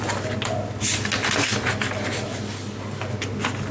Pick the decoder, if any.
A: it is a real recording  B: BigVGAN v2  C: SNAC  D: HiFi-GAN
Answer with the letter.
A